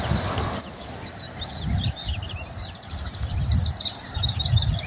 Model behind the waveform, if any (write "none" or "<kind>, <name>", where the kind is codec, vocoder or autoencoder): vocoder, BigVGAN v2